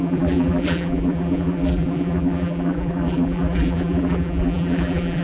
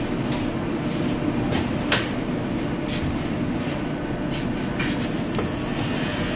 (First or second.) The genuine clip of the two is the second